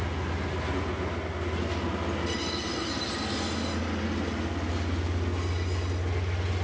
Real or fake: real